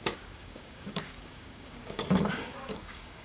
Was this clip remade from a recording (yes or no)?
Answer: yes